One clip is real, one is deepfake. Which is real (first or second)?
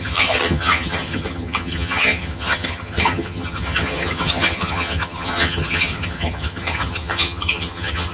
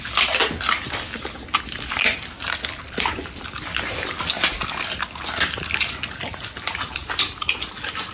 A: second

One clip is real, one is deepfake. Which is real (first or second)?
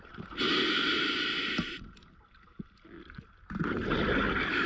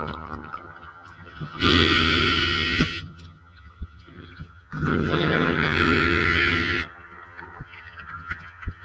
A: first